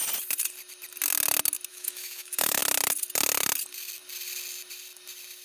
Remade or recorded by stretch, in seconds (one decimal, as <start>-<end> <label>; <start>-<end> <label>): 0.0-1.7 recorded; 1.7-2.6 remade; 2.6-5.4 recorded